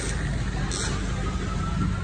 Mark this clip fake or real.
real